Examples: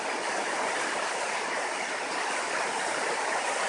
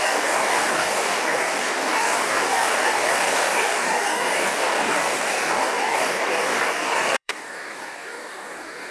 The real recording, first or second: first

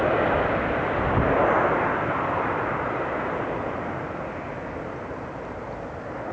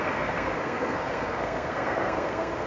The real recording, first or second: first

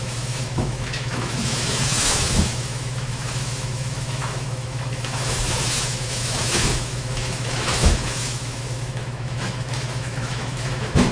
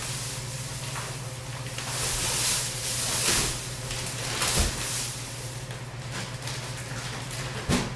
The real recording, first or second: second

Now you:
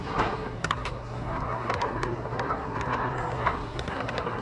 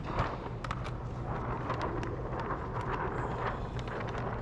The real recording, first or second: second